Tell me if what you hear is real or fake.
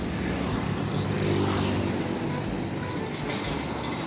real